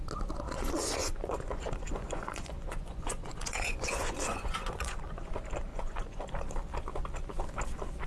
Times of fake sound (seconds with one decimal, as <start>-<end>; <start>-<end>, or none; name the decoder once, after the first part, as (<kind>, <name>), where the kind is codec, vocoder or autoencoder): 0.8-5.3 (vocoder, Vocos); 5.7-6.3